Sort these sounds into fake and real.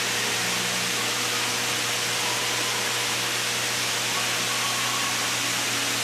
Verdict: real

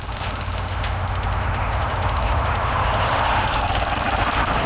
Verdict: fake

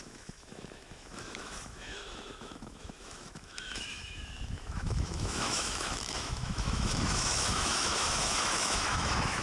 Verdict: fake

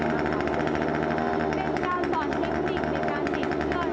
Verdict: real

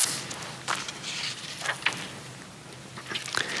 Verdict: real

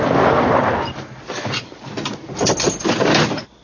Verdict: real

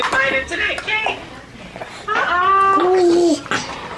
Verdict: real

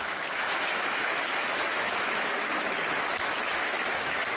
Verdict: fake